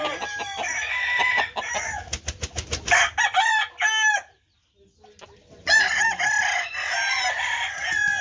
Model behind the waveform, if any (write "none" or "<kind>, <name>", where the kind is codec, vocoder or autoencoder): none